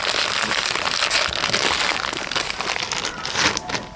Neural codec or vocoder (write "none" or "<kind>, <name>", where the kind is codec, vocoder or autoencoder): none